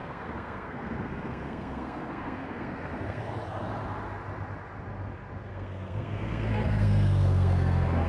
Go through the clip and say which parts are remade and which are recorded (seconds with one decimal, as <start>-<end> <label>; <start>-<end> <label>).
0.0-3.2 remade; 3.2-5.5 recorded; 5.5-8.1 remade